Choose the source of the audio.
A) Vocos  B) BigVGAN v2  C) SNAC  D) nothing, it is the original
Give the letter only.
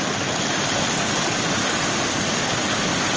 D